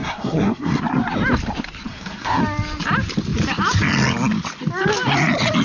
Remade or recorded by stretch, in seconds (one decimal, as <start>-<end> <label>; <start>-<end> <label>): 0.0-0.8 remade; 0.8-1.9 recorded; 1.9-2.4 remade; 2.4-5.6 recorded